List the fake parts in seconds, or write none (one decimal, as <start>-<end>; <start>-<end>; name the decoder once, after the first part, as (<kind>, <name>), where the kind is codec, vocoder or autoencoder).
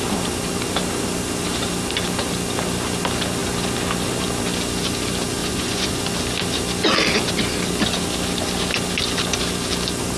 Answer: 5.4-6.0 (vocoder, Vocos)